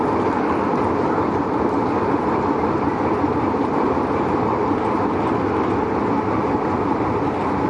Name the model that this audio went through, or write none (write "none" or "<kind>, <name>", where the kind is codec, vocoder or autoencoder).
none